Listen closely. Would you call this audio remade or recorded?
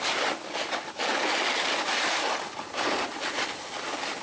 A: recorded